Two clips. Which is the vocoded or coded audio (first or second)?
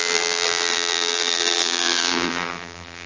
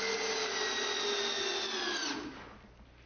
first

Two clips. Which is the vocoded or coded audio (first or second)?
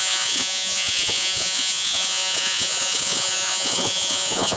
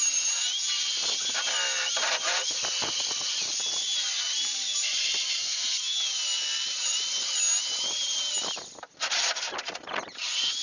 first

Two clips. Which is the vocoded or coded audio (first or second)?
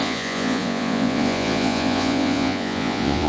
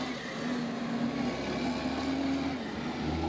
first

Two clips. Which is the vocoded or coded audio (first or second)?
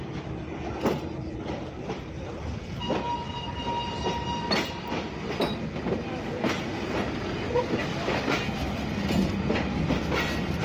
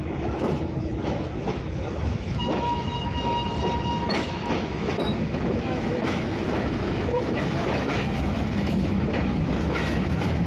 second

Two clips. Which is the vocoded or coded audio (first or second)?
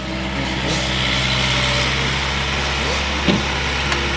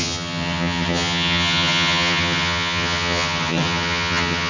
second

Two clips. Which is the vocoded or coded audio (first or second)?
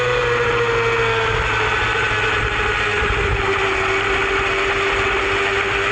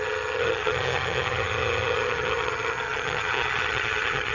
second